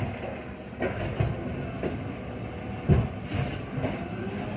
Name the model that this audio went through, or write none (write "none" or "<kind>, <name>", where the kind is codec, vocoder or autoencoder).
none